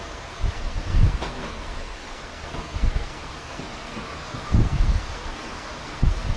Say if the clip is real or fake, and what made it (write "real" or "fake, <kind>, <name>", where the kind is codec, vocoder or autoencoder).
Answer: fake, codec, SNAC